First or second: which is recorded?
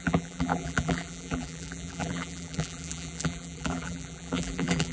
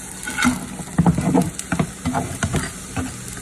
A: second